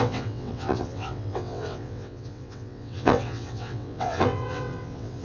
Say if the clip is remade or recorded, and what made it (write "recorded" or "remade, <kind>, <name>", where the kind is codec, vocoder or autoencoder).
remade, vocoder, WaveNeXt